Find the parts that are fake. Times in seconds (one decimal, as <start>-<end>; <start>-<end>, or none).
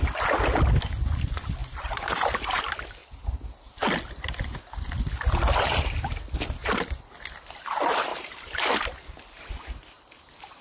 1.6-2.6; 8.1-10.6